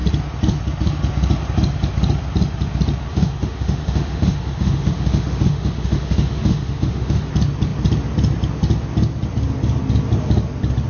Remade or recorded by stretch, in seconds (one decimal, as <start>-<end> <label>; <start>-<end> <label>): 0.0-3.1 recorded; 3.1-7.3 remade; 7.3-10.9 recorded